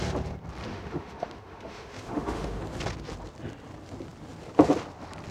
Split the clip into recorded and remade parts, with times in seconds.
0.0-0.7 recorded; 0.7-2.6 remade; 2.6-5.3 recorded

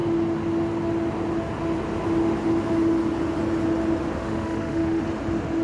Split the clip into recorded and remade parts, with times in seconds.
0.0-4.2 recorded; 4.2-5.0 remade; 5.0-5.6 recorded

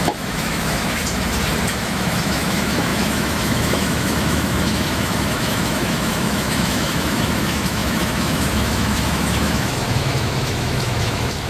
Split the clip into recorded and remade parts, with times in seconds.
0.0-1.0 remade; 1.0-1.7 recorded; 1.7-11.5 remade